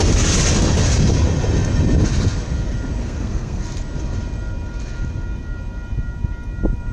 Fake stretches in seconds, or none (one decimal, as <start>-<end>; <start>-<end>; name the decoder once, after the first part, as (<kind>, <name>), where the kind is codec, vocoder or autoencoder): 3.0-3.6 (codec, SNAC)